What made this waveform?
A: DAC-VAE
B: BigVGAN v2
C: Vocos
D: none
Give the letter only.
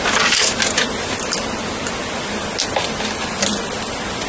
D